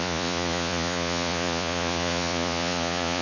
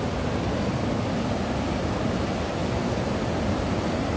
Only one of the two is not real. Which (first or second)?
first